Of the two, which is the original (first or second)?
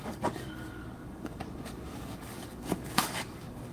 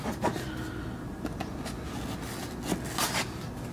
second